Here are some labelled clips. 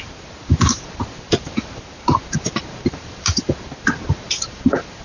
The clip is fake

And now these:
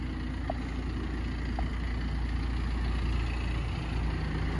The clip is real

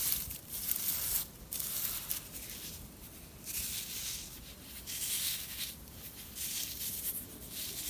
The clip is real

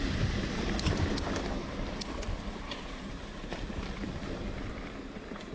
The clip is fake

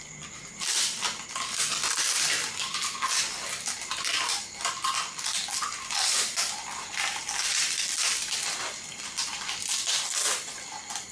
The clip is fake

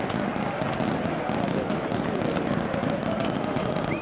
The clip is real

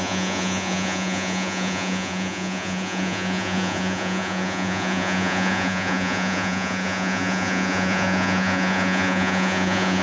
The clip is fake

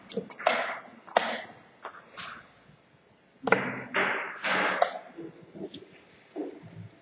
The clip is real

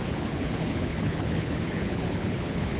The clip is fake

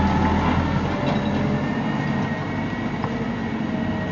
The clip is real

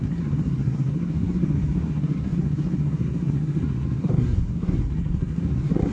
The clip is fake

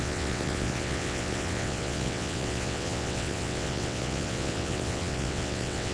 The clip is fake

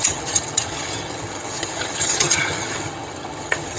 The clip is fake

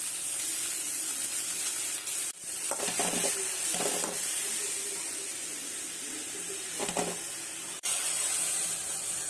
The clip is real